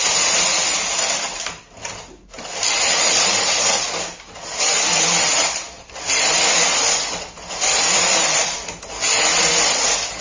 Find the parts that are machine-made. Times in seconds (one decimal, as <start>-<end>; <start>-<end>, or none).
4.7-8.7